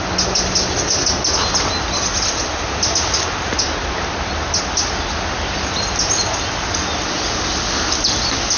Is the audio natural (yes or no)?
yes